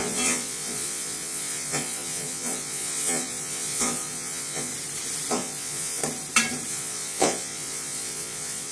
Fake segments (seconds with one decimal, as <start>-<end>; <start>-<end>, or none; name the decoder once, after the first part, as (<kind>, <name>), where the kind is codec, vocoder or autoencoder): 0.0-4.7 (vocoder, Vocos); 5.3-6.0; 6.7-8.7